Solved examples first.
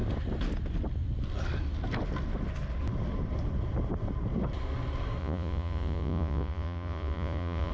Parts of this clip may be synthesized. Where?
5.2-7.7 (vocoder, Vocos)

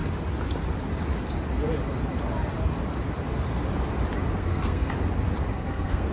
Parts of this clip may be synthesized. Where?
4.4-4.9 (codec, SNAC); 5.5-6.1

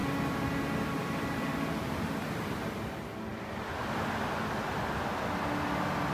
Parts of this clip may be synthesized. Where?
none

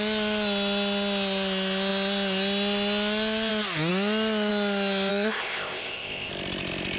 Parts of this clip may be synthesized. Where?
5.1-6.3 (codec, ZipCodec)

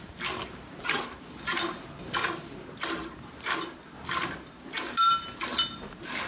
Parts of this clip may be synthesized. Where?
none

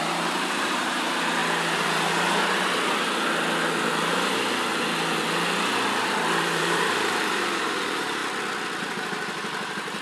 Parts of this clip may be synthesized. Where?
0.0-1.4 (vocoder, BigVGAN v2); 6.4-8.2; 8.8-10.0